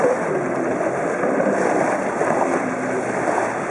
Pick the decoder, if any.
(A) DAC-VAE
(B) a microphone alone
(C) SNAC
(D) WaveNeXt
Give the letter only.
B